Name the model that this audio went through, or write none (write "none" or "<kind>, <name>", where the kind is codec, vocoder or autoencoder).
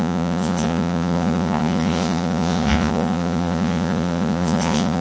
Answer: vocoder, Vocos